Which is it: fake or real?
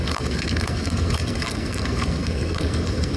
fake